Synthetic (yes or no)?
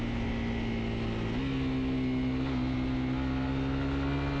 no